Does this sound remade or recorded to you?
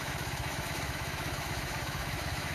remade